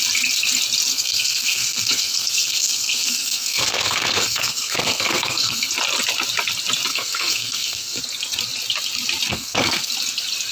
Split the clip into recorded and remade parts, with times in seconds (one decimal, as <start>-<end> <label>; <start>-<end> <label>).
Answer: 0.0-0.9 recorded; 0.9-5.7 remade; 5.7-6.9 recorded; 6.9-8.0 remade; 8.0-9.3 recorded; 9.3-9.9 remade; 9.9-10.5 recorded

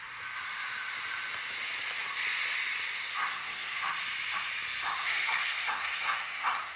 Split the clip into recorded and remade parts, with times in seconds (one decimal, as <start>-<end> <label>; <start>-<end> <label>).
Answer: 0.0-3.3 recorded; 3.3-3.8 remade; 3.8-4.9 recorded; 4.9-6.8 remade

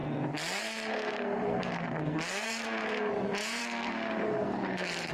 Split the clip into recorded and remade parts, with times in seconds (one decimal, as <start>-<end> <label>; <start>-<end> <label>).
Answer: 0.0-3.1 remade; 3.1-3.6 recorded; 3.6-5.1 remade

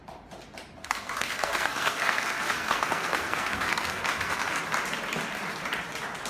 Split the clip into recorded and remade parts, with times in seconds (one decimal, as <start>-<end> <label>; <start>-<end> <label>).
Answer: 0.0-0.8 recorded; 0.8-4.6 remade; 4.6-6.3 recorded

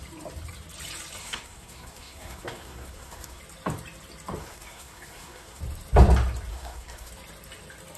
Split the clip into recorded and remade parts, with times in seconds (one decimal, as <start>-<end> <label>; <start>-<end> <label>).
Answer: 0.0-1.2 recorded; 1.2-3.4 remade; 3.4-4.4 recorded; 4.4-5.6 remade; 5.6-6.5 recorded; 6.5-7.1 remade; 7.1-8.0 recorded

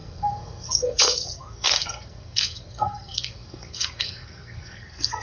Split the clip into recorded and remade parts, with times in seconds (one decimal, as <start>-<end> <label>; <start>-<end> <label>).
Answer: 0.0-5.2 remade